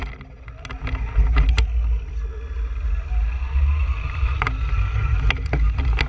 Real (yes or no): yes